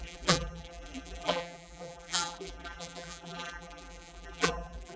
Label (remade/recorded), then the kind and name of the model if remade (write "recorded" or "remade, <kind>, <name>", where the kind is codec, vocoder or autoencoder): remade, vocoder, BigVGAN v2